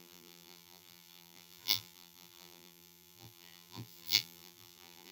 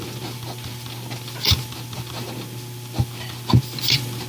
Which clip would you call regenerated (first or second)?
first